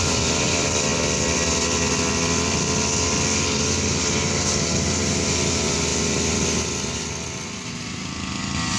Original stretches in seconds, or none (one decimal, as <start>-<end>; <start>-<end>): 0.0-8.8